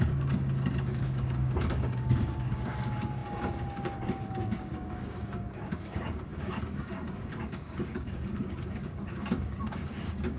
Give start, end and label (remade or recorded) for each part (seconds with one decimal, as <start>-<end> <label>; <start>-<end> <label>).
0.0-10.4 remade